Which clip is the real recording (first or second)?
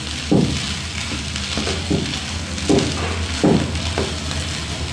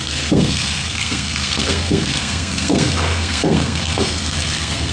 first